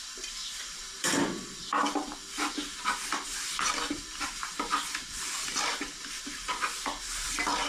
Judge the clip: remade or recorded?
remade